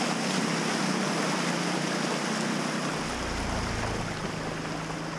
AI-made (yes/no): no